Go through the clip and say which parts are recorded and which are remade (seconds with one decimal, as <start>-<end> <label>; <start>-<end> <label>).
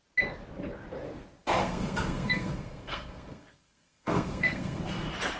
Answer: 0.0-1.6 recorded; 1.6-4.8 remade; 4.8-5.4 recorded